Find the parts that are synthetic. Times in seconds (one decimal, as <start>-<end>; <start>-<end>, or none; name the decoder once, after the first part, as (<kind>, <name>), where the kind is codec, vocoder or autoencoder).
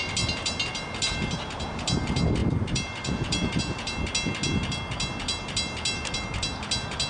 2.4-3.6 (vocoder, BigVGAN v2)